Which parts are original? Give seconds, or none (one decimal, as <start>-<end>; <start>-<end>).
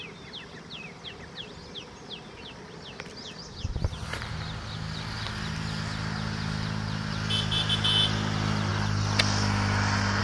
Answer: 0.0-10.2